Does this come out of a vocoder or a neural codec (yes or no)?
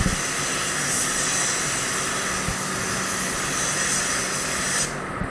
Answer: no